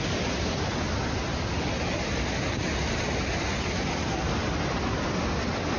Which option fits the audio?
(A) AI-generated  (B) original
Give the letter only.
B